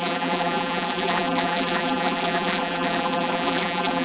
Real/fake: fake